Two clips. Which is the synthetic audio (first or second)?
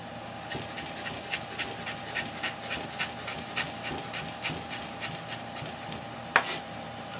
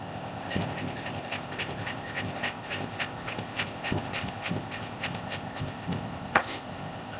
second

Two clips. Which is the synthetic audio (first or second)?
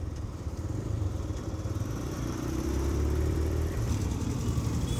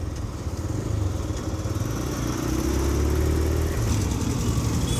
first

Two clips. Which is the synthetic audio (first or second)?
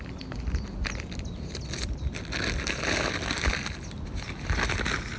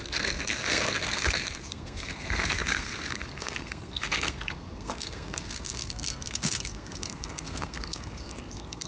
second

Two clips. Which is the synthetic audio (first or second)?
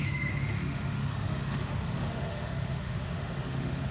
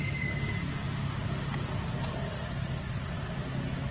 first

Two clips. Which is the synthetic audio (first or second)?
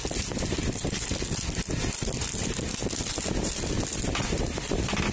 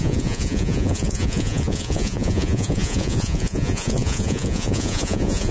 second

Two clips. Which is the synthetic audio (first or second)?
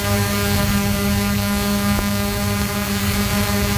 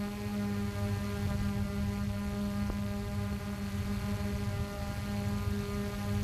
first